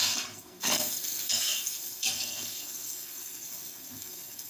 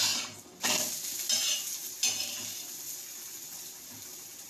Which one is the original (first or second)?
second